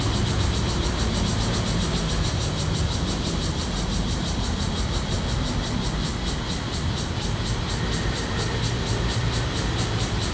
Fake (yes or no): yes